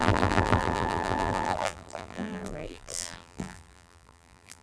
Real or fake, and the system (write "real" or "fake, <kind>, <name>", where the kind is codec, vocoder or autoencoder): fake, vocoder, BigVGAN v2